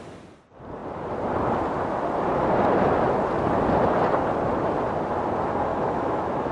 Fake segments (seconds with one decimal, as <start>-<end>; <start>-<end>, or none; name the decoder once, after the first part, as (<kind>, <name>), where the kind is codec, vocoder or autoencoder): 5.7-6.5 (autoencoder, DAC-VAE)